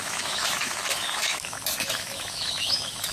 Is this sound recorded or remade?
remade